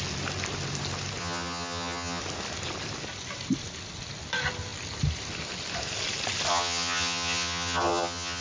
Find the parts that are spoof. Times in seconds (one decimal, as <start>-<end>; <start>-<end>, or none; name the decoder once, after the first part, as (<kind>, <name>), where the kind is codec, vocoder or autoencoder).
1.2-2.2 (vocoder, HiFi-GAN); 6.5-8.4